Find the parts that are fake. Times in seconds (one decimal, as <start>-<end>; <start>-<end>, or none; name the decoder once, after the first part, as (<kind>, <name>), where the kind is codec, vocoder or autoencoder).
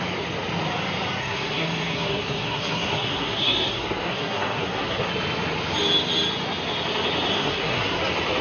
1.2-5.1 (codec, SNAC); 7.3-8.0